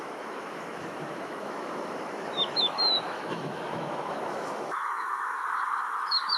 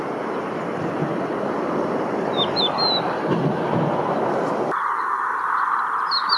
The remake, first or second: first